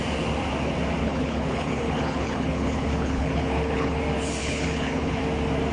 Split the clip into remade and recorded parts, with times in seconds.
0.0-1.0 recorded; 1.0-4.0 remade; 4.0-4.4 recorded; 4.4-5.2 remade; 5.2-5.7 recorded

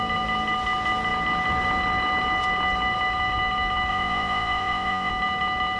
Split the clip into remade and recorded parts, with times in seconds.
0.0-3.9 recorded; 3.9-5.1 remade; 5.1-5.8 recorded

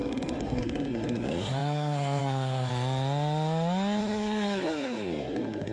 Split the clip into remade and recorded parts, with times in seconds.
0.0-2.7 remade; 2.7-4.0 recorded; 4.0-5.7 remade

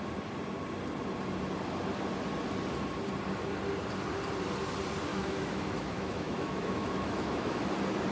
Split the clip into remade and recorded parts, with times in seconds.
0.0-5.1 recorded; 5.1-7.6 remade; 7.6-8.1 recorded